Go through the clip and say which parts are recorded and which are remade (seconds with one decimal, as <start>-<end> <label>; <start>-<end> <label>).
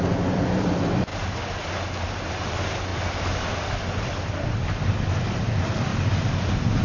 0.0-1.1 remade; 1.1-2.0 recorded; 2.0-5.9 remade; 5.9-6.8 recorded